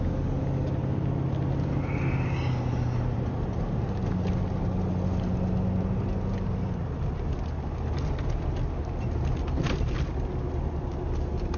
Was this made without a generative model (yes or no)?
yes